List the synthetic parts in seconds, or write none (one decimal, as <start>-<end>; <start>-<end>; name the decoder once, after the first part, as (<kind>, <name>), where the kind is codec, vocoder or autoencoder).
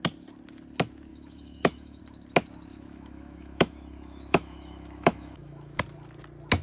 1.1-2.0 (autoencoder, DAC-VAE); 2.7-5.8